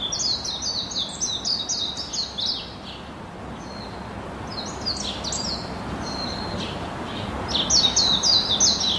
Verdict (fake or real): real